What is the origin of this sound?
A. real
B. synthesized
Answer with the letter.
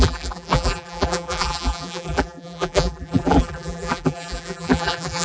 B